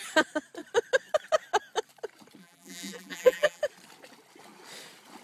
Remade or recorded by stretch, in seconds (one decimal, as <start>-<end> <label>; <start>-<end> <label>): 0.0-2.4 recorded; 2.4-3.6 remade; 3.6-5.2 recorded

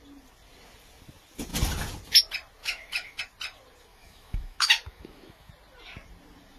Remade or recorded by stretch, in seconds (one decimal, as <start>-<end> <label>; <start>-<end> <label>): 0.0-2.6 recorded; 2.6-3.2 remade; 3.2-3.9 recorded; 3.9-5.5 remade; 5.5-6.6 recorded

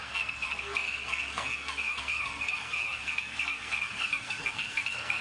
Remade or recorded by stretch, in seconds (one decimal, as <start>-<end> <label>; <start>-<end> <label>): 0.0-5.2 remade

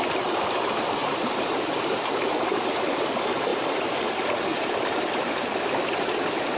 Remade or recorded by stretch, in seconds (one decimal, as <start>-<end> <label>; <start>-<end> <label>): 0.0-1.0 recorded; 1.0-2.1 remade; 2.1-3.5 recorded; 3.5-4.0 remade; 4.0-4.5 recorded; 4.5-5.4 remade; 5.4-6.6 recorded